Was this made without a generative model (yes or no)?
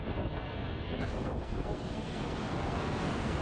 no